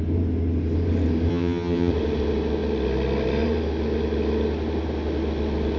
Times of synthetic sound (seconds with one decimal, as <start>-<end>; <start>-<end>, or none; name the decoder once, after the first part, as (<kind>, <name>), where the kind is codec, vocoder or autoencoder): 1.3-1.9 (vocoder, HiFi-GAN)